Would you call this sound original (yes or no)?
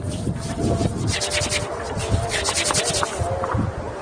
yes